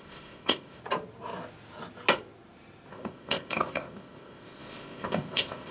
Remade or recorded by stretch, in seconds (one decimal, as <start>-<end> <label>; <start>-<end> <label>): 0.0-0.8 remade; 0.8-2.9 recorded; 2.9-5.7 remade